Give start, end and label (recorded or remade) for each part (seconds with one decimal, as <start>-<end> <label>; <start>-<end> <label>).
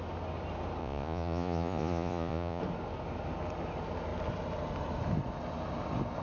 0.0-0.8 recorded; 0.8-2.6 remade; 2.6-6.2 recorded